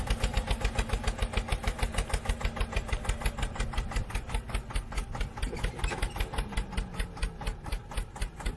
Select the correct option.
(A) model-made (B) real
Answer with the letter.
B